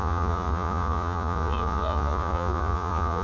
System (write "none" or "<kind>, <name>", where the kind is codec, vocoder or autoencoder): vocoder, Vocos